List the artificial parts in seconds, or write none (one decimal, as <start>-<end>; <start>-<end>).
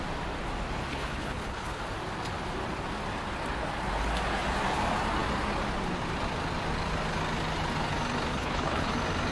0.9-1.8; 8.3-8.9